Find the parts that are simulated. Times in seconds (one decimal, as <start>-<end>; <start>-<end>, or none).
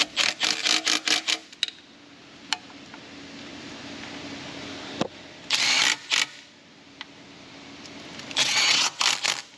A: 8.4-9.0